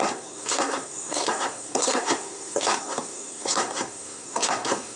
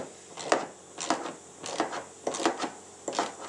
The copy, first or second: first